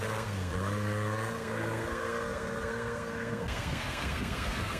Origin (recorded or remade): remade